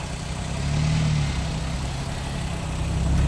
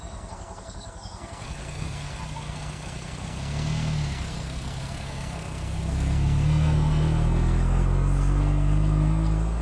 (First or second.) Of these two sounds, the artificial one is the second